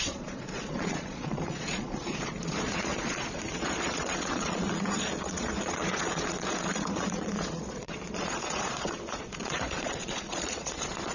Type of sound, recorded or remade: remade